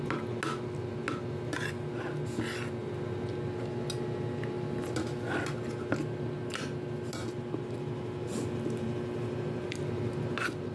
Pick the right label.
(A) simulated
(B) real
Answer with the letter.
B